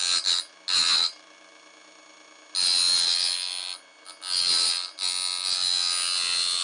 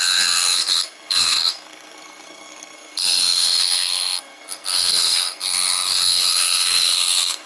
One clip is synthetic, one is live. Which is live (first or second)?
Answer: first